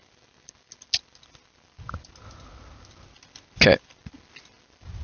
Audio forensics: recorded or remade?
recorded